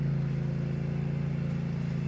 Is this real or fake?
real